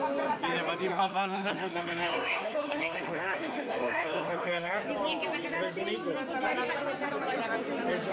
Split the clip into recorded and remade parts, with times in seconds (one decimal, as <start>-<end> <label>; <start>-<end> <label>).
0.0-0.9 recorded; 0.9-4.8 remade; 4.8-8.1 recorded